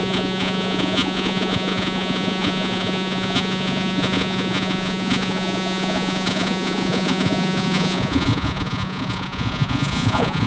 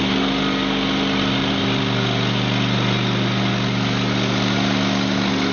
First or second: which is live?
second